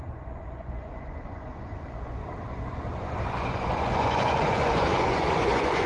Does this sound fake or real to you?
fake